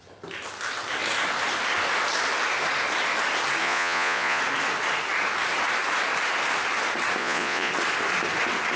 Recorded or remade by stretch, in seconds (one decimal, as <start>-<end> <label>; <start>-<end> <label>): 0.0-3.6 recorded; 3.6-4.4 remade; 4.4-7.2 recorded; 7.2-7.7 remade; 7.7-8.8 recorded